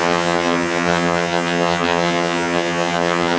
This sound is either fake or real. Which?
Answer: fake